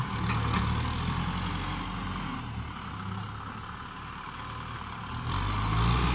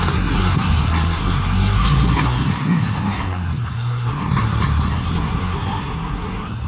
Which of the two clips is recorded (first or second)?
first